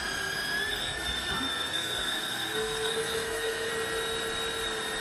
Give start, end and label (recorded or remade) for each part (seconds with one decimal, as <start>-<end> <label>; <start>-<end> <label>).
0.0-0.7 recorded; 0.7-3.7 remade; 3.7-5.0 recorded